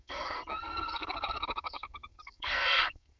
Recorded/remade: remade